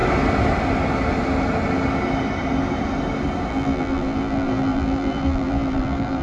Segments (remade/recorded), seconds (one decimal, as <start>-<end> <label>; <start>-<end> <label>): 0.0-3.5 recorded; 3.5-6.2 remade